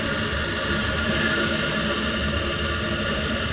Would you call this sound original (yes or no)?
yes